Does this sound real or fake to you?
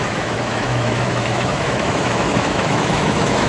fake